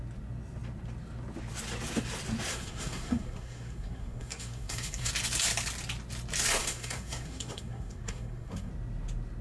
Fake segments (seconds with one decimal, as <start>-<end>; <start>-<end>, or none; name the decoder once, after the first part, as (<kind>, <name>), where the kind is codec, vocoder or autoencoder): 2.5-5.1 (codec, SNAC); 6.6-8.7